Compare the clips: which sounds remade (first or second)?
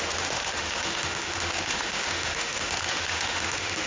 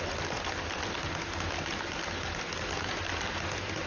first